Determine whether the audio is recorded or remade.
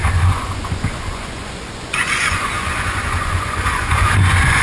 remade